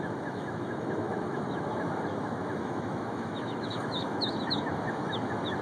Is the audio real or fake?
fake